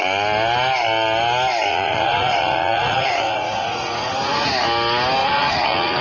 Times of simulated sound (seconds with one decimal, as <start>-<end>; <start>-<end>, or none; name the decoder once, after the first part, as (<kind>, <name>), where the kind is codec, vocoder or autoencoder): 1.7-4.5 (vocoder, Vocos); 5.2-6.0